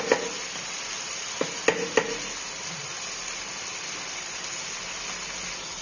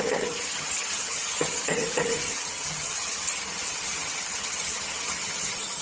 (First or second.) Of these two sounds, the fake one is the second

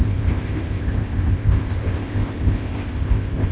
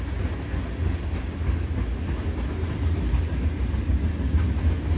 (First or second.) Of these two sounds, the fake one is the first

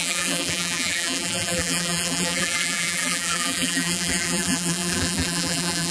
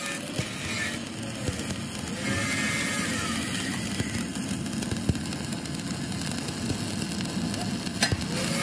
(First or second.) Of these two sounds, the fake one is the first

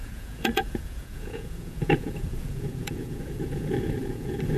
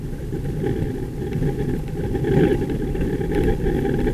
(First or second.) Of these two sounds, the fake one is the first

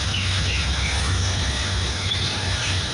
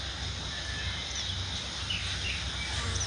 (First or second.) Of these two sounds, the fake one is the first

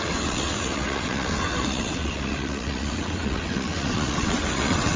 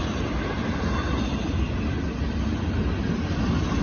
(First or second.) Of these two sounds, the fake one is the first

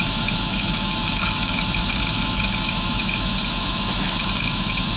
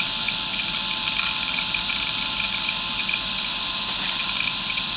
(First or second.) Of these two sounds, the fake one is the first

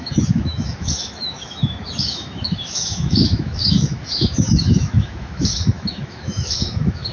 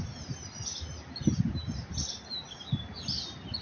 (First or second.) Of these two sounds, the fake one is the first